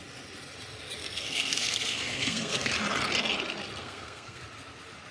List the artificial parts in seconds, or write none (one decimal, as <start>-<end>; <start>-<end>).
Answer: 1.0-2.7; 3.8-4.4